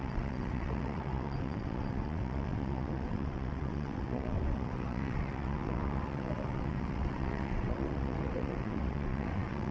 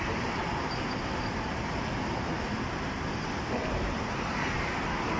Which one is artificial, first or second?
first